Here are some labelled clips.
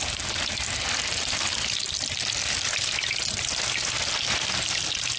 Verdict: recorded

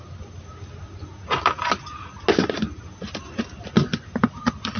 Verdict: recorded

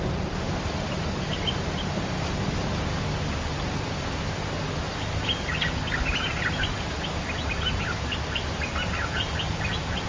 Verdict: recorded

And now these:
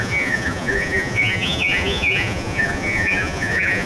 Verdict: remade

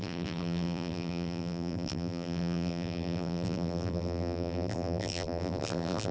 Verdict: remade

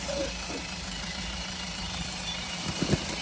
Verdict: remade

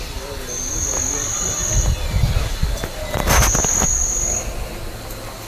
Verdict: recorded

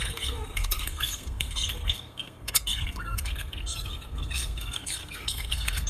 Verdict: remade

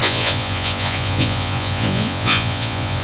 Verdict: remade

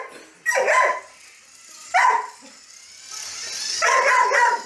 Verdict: recorded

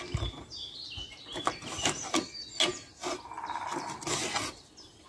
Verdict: recorded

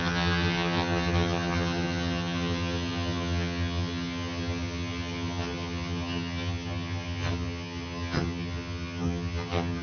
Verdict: remade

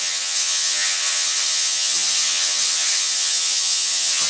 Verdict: remade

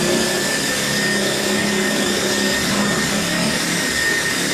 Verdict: remade